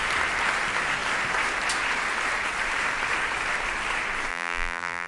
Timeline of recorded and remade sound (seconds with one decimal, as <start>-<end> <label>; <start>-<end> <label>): 0.0-4.3 recorded; 4.3-5.1 remade